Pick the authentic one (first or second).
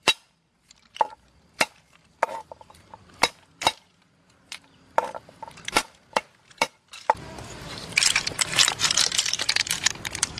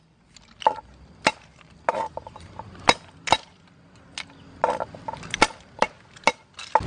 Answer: second